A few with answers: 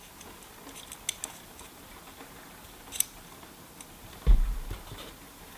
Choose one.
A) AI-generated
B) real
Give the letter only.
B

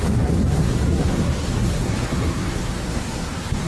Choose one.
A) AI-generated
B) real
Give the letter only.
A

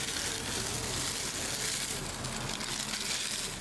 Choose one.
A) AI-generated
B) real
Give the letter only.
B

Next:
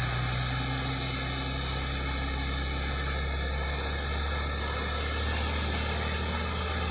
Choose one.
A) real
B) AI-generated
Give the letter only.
A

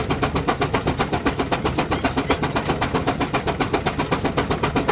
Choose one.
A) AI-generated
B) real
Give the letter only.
B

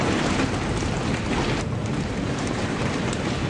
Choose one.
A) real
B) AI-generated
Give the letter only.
B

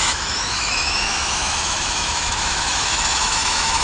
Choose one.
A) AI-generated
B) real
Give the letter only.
A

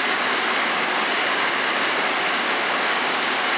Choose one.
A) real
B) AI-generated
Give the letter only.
B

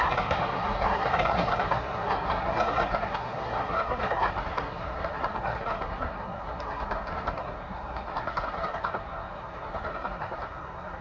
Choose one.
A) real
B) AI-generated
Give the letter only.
B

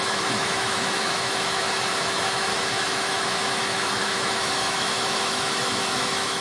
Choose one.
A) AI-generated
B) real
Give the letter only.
A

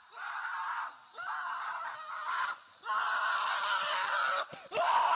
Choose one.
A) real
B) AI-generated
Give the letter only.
A